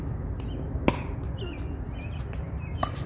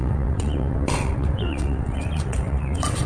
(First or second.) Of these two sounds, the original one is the first